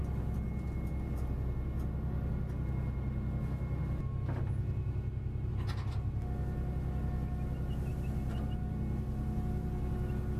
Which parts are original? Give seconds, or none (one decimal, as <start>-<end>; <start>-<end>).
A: 0.0-10.4